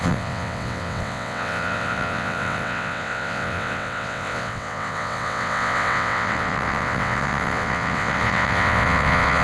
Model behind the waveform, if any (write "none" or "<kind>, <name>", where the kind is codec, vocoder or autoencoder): vocoder, WaveNeXt